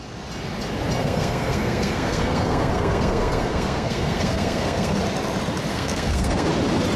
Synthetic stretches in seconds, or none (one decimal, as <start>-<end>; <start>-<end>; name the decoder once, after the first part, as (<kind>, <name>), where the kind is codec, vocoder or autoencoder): 1.0-5.0 (codec, SNAC); 5.7-6.5